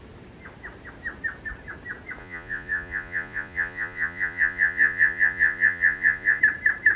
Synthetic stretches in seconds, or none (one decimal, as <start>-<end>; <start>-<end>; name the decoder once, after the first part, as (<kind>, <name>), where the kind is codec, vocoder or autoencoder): 2.2-6.4 (vocoder, Vocos)

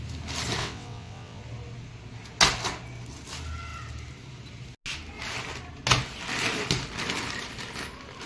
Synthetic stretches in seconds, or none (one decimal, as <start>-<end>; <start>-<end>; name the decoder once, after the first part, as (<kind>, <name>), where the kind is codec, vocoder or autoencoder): 0.6-1.4 (vocoder, WaveNeXt)